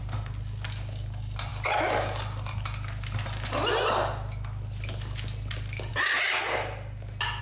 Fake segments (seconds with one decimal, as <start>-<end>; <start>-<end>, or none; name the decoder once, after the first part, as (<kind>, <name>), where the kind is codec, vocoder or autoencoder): none